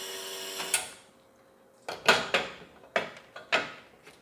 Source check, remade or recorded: recorded